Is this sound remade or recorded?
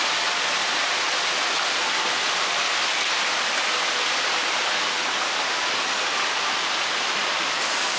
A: recorded